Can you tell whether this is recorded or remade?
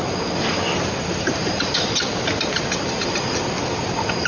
recorded